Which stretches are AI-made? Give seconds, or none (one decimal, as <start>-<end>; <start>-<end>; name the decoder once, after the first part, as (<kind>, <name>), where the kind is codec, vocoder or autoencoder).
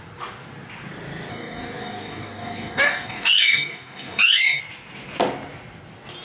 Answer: 1.3-4.6 (codec, DAC)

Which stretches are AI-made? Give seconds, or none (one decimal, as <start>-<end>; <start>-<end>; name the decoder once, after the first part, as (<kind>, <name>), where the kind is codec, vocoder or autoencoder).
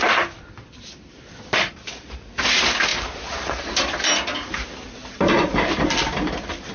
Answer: 0.0-6.7 (vocoder, BigVGAN v2)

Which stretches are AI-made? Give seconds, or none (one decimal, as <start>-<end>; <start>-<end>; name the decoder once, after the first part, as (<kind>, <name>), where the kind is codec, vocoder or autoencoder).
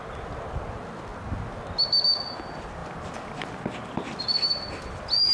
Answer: 1.1-1.6 (vocoder, BigVGAN v2)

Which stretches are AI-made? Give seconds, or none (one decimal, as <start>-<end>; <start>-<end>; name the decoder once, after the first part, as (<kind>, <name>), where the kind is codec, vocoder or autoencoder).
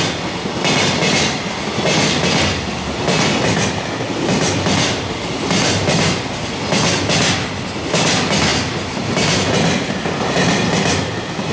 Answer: none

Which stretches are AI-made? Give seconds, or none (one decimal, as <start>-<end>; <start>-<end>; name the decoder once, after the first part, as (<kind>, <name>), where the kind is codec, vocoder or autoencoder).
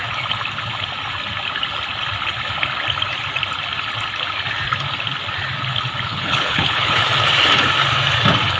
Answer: 6.1-7.0 (codec, HILCodec)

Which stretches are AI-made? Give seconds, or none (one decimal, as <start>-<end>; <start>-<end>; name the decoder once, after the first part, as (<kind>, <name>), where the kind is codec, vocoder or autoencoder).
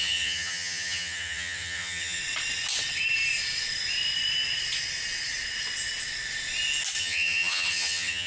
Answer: 0.0-2.2 (vocoder, HiFi-GAN); 7.0-8.3